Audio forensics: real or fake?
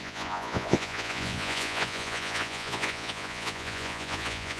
fake